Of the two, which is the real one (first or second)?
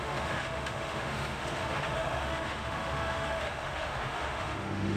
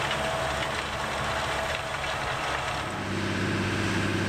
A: second